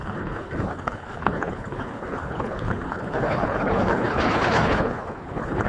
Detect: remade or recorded remade